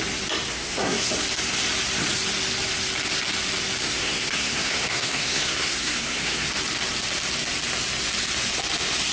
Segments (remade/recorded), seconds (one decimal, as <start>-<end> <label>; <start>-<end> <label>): 0.0-0.5 recorded; 0.5-1.1 remade; 1.1-3.8 recorded; 3.8-6.5 remade; 6.5-9.1 recorded

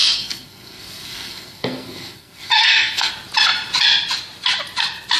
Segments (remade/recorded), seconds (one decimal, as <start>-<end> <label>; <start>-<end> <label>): 0.0-3.1 remade; 3.1-5.2 recorded

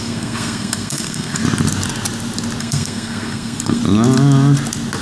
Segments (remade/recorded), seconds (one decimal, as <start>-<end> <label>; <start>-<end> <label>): 0.0-1.4 remade; 1.4-2.6 recorded; 2.6-3.8 remade; 3.8-5.0 recorded

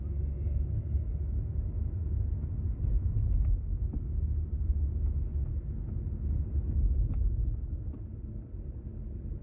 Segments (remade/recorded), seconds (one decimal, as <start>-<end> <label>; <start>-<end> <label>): 0.0-9.4 recorded

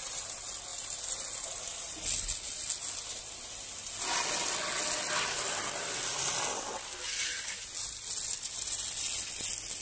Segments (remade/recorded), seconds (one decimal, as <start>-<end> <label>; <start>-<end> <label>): 0.0-9.8 recorded

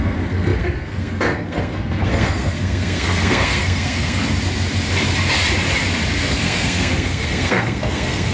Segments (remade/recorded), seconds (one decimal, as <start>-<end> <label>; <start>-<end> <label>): 0.0-4.2 remade; 4.2-6.2 recorded; 6.2-8.3 remade